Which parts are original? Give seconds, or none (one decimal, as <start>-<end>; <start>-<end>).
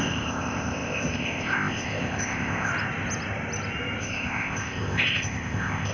2.7-4.0